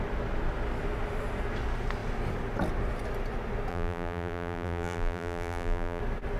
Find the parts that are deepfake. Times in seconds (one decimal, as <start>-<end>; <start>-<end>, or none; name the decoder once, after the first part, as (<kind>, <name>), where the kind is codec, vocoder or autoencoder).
3.7-6.0 (vocoder, BigVGAN v2)